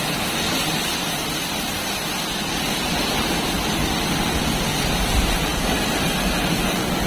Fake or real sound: real